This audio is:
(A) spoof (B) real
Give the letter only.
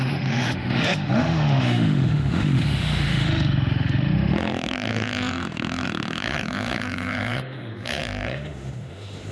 A